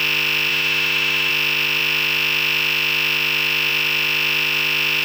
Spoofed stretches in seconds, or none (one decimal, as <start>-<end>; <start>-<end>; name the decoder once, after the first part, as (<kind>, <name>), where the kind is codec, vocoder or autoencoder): 0.5-1.3 (autoencoder, DAC-VAE)